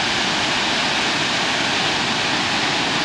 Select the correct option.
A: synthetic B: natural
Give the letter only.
B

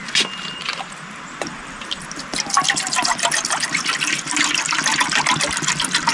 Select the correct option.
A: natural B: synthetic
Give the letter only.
A